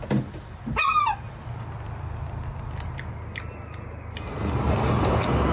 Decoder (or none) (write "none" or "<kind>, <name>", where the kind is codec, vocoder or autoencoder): none